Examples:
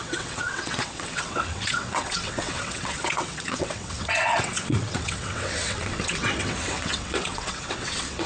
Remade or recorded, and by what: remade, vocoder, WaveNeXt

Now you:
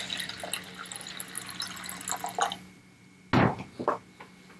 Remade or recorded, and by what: recorded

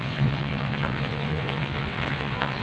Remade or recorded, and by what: remade, vocoder, WaveNeXt